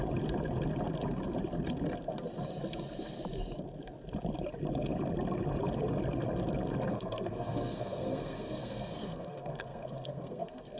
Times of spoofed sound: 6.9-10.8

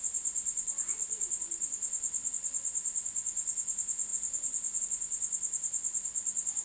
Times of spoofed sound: 4.1-4.8

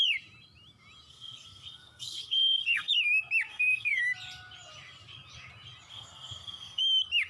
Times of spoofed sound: 1.1-2.9; 3.5-4.0; 5.9-6.8

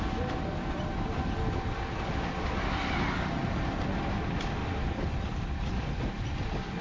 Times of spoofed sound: 4.6-6.0